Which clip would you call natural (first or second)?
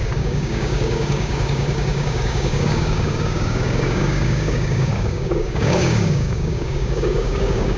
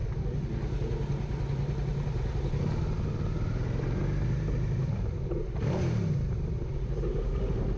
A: second